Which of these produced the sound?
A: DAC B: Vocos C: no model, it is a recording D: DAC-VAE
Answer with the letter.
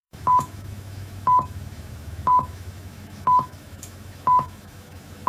D